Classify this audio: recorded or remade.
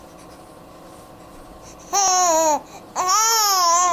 recorded